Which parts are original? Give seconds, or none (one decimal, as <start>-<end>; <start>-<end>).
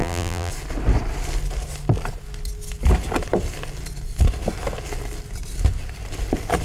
0.5-6.6